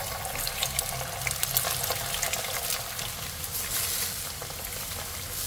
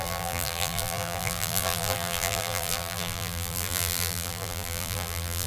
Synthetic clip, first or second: second